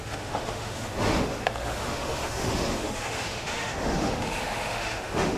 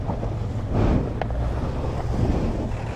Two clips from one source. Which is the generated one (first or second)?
first